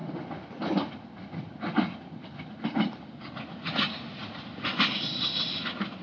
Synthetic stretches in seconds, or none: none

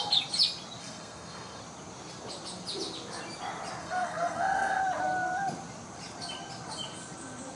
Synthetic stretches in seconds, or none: 0.8-1.6 (codec, SNAC); 3.8-4.8

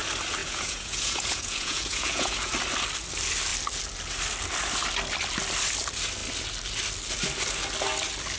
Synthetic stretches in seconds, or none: 0.4-2.5 (vocoder, Vocos)

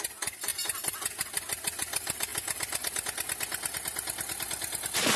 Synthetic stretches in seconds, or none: 0.5-1.2 (vocoder, BigVGAN v2)

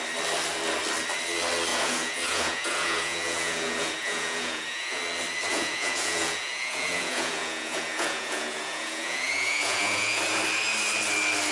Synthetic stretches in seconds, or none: 1.7-5.0 (vocoder, Vocos); 5.5-10.2

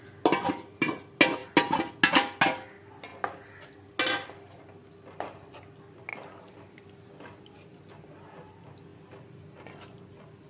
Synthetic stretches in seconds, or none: none

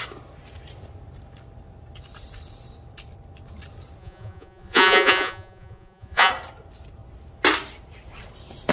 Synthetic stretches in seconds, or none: 4.0-6.3 (vocoder, Vocos)

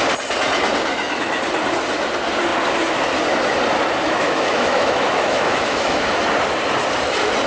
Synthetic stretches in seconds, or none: 0.9-1.4 (autoencoder, DAC-VAE); 4.0-6.2